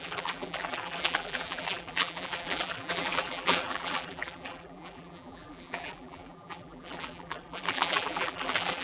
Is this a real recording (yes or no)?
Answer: no